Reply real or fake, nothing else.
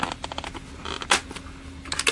real